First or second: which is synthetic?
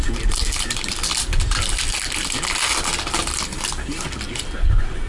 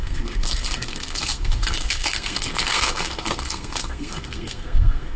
second